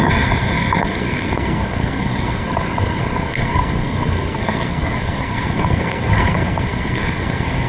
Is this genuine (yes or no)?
no